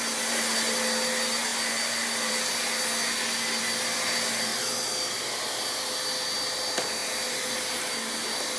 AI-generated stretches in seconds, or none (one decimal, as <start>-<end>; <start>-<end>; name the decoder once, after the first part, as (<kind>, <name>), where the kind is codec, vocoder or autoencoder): none